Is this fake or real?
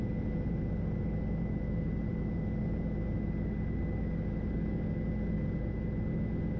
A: real